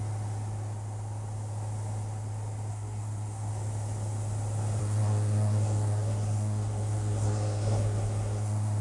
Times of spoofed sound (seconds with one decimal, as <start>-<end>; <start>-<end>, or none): 2.7-3.5; 4.8-8.8